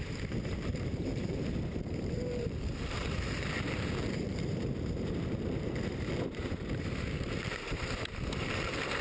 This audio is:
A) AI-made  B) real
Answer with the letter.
A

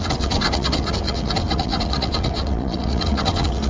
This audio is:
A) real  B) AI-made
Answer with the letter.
B